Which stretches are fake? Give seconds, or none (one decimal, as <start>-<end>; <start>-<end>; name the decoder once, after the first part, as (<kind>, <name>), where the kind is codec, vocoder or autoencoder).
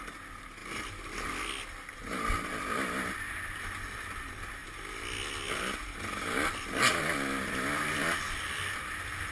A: none